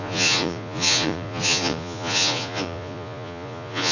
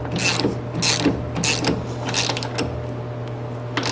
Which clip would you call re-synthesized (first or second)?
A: first